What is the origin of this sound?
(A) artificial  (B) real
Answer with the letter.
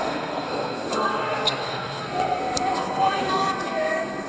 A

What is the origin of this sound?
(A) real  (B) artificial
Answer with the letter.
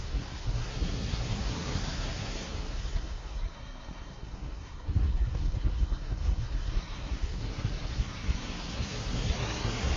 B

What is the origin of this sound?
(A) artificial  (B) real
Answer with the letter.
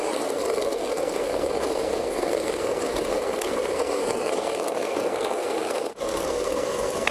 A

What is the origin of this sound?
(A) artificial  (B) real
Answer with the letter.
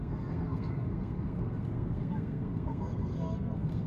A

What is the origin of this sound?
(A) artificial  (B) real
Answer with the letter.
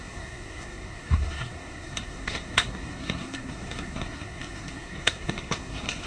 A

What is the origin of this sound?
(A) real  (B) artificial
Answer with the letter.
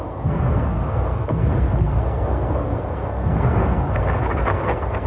B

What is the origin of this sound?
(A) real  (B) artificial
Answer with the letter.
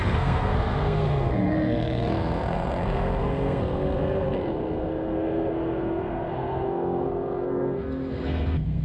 B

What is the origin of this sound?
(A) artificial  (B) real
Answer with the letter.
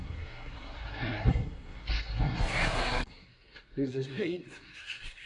A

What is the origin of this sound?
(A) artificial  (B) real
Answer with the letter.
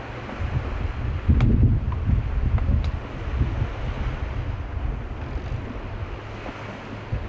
B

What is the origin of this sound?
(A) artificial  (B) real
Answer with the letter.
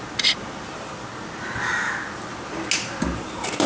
B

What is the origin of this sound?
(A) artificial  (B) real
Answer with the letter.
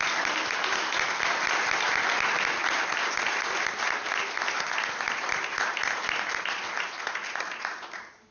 B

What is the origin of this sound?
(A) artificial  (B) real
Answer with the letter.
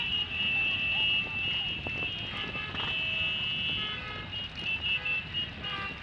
B